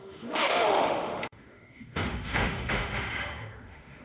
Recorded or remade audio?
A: remade